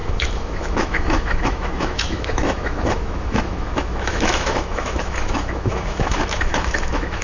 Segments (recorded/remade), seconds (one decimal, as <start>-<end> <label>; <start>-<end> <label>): 0.0-7.2 remade